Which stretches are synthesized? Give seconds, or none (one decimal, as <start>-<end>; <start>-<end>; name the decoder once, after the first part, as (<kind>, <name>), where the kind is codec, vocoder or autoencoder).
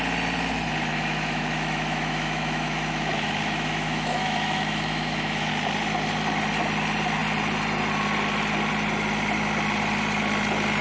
0.9-5.5 (autoencoder, DAC-VAE)